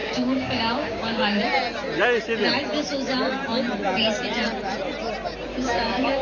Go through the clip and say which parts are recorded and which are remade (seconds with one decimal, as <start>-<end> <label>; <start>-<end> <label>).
0.0-1.4 remade; 1.4-5.5 recorded; 5.5-6.2 remade